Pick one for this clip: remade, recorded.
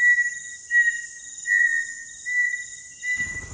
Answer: recorded